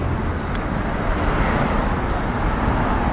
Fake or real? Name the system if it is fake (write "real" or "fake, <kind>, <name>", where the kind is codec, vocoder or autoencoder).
real